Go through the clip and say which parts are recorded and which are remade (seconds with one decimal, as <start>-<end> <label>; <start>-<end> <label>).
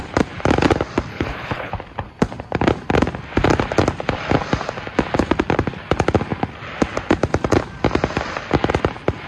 0.0-1.1 recorded; 1.1-1.7 remade; 1.7-9.3 recorded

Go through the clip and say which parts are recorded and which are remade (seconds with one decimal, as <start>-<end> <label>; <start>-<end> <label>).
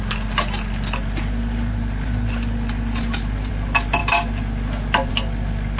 0.0-5.8 recorded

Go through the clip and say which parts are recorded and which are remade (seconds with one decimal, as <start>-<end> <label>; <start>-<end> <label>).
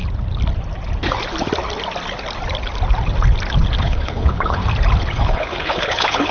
0.0-3.8 recorded; 3.8-4.6 remade; 4.6-5.1 recorded; 5.1-6.3 remade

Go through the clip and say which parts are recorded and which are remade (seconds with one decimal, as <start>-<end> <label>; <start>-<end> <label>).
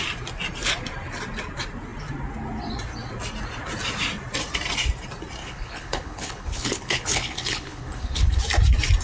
0.0-5.4 recorded; 5.4-8.4 remade; 8.4-9.0 recorded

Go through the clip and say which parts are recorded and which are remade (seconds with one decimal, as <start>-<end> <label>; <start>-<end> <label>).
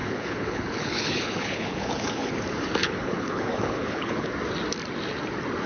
0.0-2.3 remade; 2.3-2.8 recorded; 2.8-4.3 remade; 4.3-5.7 recorded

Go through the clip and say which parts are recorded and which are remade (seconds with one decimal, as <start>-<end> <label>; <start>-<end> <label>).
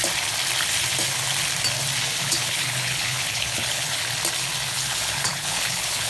0.0-2.2 recorded; 2.2-4.0 remade; 4.0-4.7 recorded; 4.7-6.1 remade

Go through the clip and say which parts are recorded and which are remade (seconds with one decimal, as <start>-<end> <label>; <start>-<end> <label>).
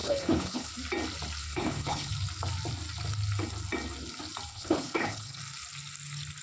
0.0-0.7 remade; 0.7-1.4 recorded; 1.4-2.1 remade; 2.1-4.5 recorded; 4.5-5.4 remade; 5.4-6.4 recorded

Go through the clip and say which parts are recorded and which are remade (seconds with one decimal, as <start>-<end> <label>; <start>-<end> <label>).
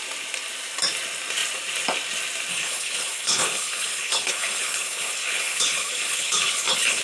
0.0-2.5 recorded; 2.5-7.0 remade